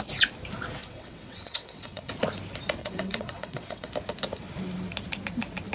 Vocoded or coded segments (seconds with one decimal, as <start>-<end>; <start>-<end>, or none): 0.8-2.1; 2.8-3.9